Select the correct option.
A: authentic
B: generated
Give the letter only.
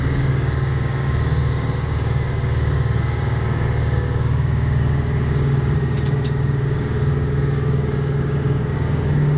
B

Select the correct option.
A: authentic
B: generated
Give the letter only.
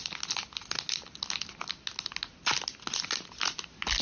A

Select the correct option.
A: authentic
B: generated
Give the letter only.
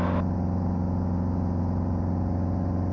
A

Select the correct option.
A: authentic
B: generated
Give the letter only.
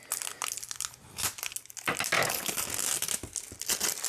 A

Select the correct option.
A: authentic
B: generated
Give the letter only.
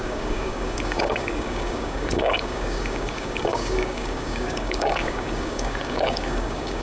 B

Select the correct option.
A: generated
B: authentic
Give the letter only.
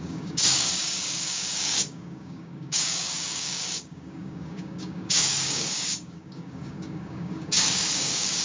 A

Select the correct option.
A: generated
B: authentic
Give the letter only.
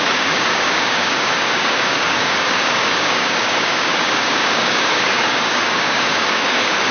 A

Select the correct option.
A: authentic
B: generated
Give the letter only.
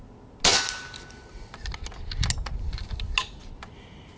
A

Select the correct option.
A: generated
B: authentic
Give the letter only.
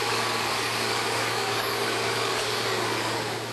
A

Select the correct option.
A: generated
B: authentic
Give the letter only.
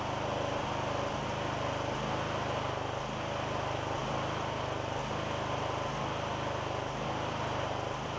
B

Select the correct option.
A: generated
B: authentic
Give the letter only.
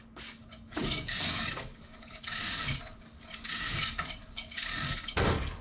A